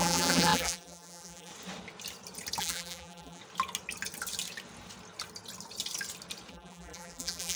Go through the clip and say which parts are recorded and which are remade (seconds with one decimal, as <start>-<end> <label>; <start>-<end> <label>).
0.0-1.5 remade; 1.5-2.6 recorded; 2.6-3.4 remade; 3.4-6.5 recorded; 6.5-7.6 remade